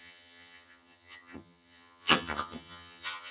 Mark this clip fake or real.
fake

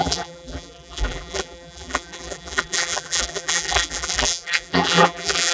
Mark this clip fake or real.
fake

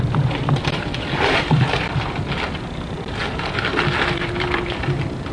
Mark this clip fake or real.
fake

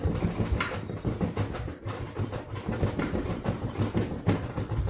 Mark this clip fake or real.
fake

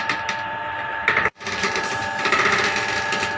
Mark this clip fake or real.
fake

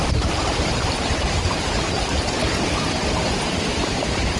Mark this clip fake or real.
fake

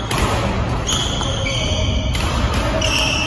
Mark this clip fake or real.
real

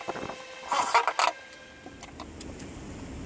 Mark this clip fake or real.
real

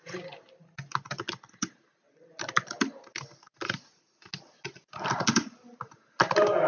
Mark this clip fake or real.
real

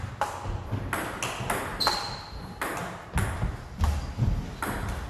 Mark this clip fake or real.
real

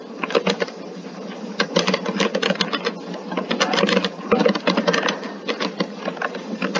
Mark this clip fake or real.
real